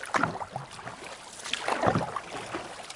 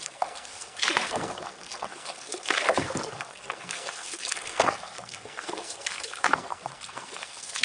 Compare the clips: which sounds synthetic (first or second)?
second